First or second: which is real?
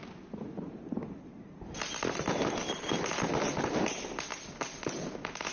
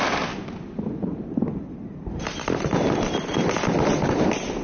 first